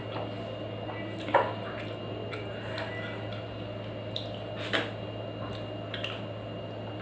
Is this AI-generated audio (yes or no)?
no